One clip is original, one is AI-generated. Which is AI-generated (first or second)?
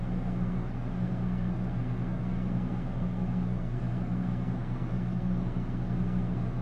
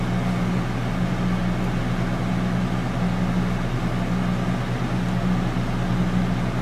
first